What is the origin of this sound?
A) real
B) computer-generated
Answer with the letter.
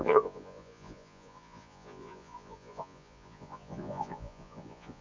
B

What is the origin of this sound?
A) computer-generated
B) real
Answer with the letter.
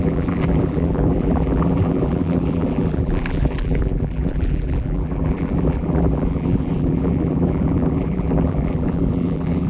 A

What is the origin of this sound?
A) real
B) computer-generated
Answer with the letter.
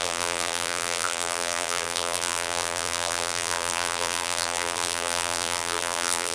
B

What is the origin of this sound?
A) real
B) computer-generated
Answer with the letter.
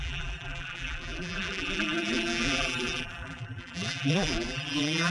B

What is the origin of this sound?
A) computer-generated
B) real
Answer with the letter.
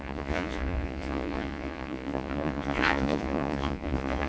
A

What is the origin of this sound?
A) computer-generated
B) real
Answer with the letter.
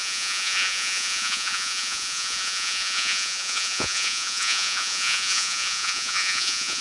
A